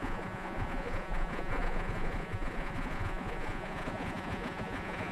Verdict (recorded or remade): remade